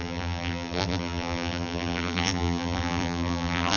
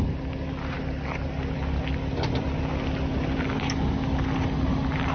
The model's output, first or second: first